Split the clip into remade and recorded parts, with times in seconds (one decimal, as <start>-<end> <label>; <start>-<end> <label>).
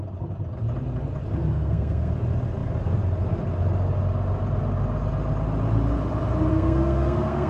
0.0-1.5 recorded; 1.5-2.1 remade; 2.1-6.5 recorded; 6.5-7.5 remade